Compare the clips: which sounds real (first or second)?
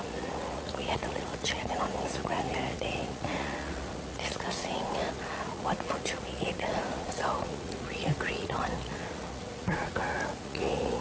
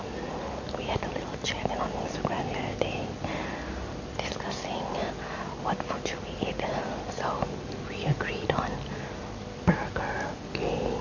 second